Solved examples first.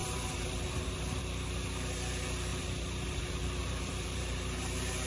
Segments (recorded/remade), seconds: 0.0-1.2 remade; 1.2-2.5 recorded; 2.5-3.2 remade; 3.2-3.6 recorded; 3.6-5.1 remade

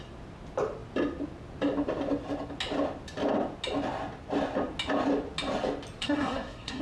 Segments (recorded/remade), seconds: 0.0-6.0 recorded; 6.0-6.8 remade

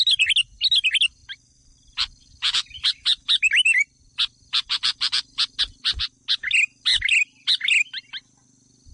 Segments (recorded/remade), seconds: 0.0-1.2 recorded; 1.2-5.6 remade; 5.6-6.9 recorded; 6.9-8.1 remade; 8.1-8.9 recorded

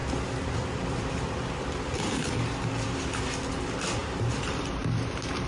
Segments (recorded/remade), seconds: 0.0-3.3 remade; 3.3-4.0 recorded; 4.0-5.1 remade; 5.1-5.5 recorded

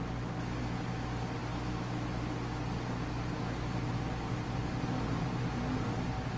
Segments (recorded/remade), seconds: 0.0-6.4 recorded